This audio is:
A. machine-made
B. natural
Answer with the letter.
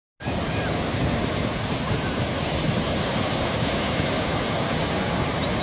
B